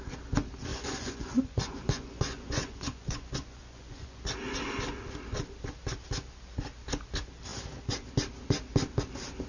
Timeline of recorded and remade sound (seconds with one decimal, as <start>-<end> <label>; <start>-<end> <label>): 0.0-0.7 recorded; 0.7-4.2 remade; 4.2-9.5 recorded